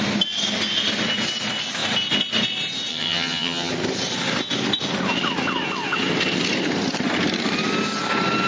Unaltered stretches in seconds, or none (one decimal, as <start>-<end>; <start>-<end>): 0.0-2.9; 3.7-8.5